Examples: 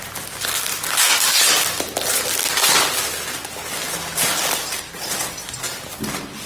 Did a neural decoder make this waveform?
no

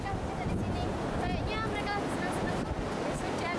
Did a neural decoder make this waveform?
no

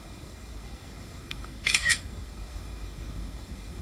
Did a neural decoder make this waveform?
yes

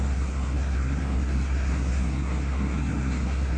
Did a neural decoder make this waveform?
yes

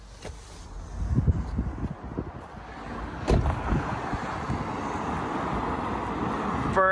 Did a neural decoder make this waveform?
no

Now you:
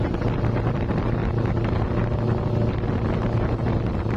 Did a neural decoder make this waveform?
no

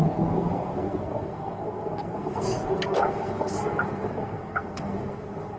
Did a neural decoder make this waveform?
yes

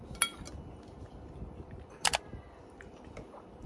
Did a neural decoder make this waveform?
no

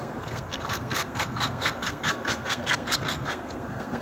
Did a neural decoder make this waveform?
yes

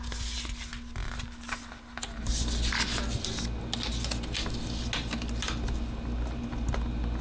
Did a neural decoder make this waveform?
no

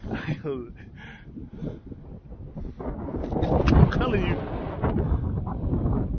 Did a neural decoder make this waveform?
no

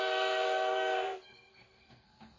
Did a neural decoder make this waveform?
yes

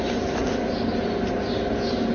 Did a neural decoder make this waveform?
no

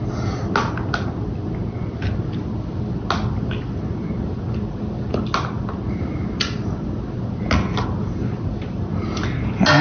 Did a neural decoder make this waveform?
no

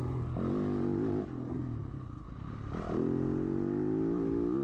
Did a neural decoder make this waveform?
no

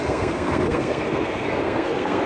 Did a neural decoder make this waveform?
yes